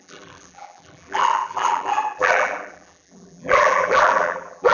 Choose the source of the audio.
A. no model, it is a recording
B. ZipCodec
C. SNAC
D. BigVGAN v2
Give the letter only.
D